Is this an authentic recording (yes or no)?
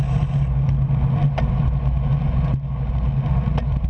yes